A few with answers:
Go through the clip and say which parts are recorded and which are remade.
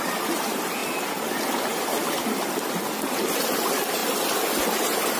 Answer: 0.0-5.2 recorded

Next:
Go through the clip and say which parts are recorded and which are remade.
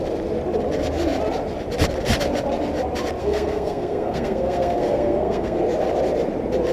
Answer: 0.0-3.2 recorded; 3.2-5.6 remade; 5.6-6.7 recorded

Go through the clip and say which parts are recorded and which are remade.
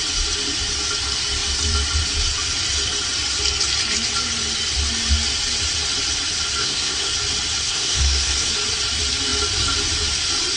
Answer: 0.0-6.6 recorded; 6.6-7.1 remade; 7.1-7.6 recorded; 7.6-8.5 remade; 8.5-10.6 recorded